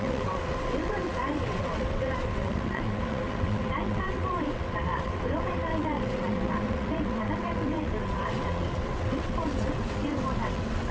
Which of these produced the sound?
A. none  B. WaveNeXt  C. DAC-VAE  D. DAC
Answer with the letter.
B